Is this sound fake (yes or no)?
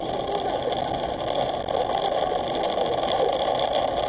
no